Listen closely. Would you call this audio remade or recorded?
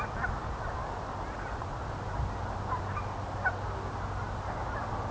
recorded